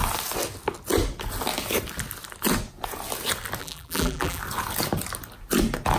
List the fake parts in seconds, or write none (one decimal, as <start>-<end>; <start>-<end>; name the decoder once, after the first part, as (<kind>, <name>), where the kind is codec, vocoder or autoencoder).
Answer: 3.6-4.4 (vocoder, BigVGAN v2)